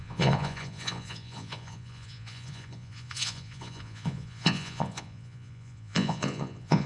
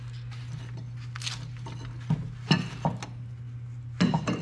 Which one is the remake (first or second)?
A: first